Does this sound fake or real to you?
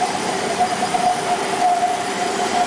fake